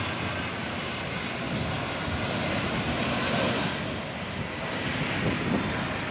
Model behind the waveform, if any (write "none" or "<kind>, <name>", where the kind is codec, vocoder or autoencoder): none